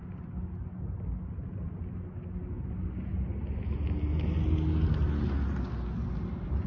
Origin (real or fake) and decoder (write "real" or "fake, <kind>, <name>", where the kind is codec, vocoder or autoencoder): real